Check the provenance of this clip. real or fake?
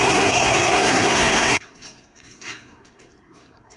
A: fake